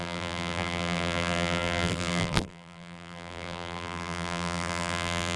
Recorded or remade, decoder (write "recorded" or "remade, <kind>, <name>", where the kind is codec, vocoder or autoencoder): remade, vocoder, BigVGAN v2